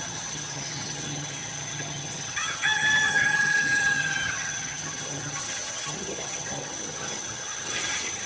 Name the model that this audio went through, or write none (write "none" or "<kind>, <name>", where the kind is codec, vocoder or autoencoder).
vocoder, HiFi-GAN